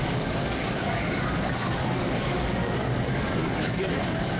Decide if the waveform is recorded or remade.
remade